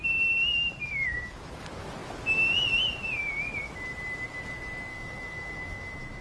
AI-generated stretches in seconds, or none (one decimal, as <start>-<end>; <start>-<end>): 0.9-1.5; 4.9-6.2